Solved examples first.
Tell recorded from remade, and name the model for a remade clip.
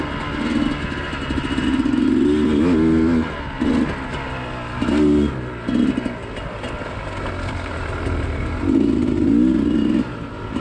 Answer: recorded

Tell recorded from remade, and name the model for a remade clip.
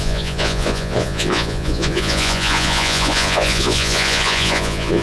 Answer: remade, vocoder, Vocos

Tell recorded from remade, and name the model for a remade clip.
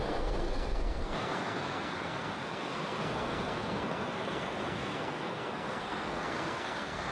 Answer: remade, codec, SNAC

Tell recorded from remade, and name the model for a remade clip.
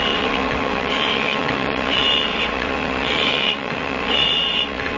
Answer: remade, vocoder, WaveNeXt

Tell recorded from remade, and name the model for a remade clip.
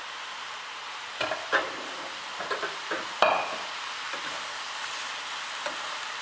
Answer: recorded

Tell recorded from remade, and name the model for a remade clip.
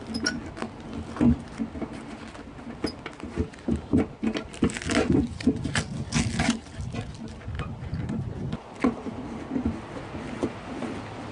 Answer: recorded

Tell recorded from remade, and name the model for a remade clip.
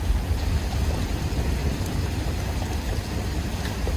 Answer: recorded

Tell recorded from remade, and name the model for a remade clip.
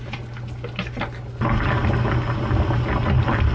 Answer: recorded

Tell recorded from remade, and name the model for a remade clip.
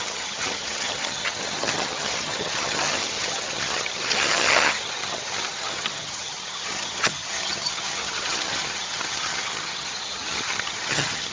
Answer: remade, vocoder, HiFi-GAN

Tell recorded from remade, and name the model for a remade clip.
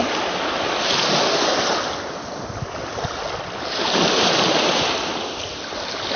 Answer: recorded